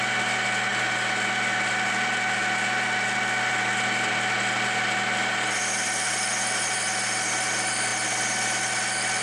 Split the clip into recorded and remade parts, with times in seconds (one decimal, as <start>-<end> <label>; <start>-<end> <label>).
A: 0.0-9.2 recorded